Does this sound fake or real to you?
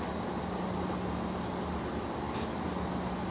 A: real